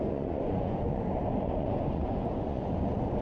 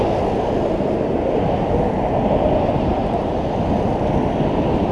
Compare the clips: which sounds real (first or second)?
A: second